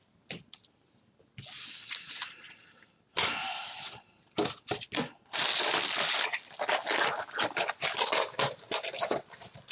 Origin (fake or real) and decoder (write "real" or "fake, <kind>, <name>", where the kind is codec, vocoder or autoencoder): real